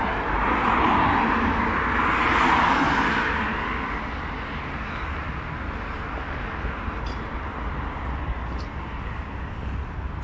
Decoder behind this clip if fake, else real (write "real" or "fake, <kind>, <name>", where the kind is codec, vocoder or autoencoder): real